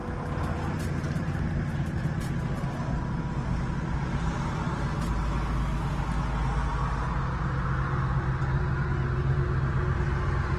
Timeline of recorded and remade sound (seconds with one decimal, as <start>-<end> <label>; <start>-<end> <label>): 0.0-0.5 recorded; 0.5-2.7 remade; 2.7-10.6 recorded